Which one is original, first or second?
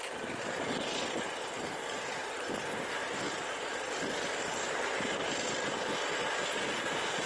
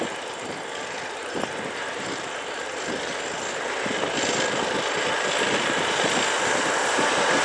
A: first